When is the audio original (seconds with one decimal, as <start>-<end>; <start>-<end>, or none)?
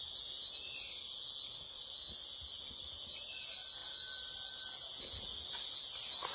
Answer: 0.0-6.3